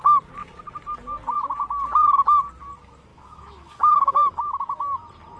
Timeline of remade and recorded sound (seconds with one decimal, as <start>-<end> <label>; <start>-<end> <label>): 0.0-3.1 recorded; 3.1-5.0 remade; 5.0-5.4 recorded